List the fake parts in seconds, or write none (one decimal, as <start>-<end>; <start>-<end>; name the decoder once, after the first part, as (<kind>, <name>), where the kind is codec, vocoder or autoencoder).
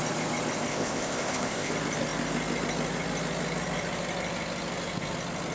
0.7-1.7 (codec, ZipCodec)